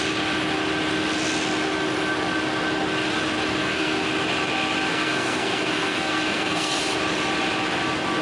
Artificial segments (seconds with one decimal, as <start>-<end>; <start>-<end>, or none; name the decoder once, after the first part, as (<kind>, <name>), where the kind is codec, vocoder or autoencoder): 3.6-4.1 (codec, SNAC); 4.9-6.8